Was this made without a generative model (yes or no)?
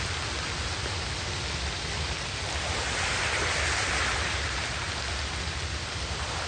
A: yes